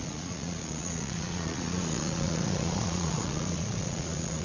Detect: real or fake fake